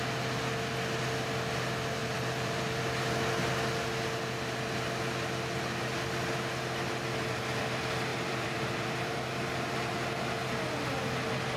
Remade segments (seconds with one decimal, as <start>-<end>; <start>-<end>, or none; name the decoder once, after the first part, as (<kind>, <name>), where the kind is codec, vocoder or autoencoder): 2.0-2.8 (vocoder, BigVGAN v2); 8.1-9.3